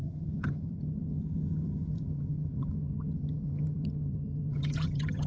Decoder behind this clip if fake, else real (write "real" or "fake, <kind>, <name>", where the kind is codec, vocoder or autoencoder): fake, vocoder, HiFi-GAN